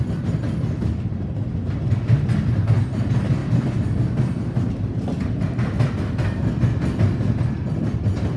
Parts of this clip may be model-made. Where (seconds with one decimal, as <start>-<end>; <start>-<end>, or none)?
3.4-4.7